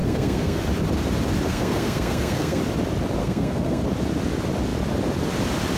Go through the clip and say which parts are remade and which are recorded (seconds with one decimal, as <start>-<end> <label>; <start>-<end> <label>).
0.0-0.6 remade; 0.6-1.5 recorded; 1.5-2.6 remade; 2.6-3.2 recorded; 3.2-3.8 remade; 3.8-5.8 recorded